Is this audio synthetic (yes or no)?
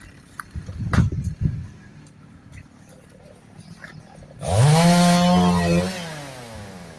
no